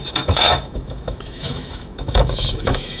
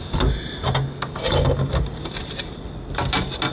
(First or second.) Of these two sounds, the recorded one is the second